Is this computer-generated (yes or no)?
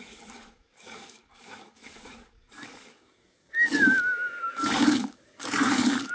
yes